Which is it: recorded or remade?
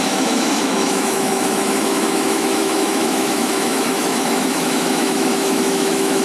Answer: remade